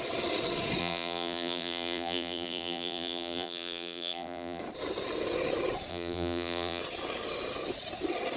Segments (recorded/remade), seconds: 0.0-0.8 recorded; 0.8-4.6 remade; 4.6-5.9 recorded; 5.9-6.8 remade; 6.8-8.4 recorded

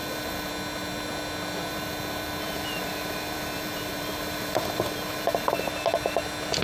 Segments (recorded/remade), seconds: 0.0-0.5 remade; 0.5-1.7 recorded; 1.7-5.7 remade; 5.7-6.6 recorded